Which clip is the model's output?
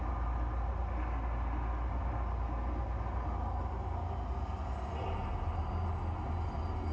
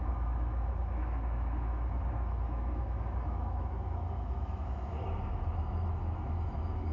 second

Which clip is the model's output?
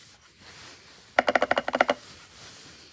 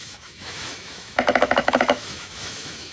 second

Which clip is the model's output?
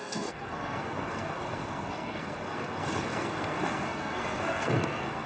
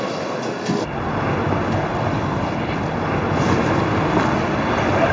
first